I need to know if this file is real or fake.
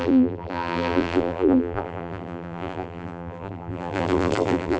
fake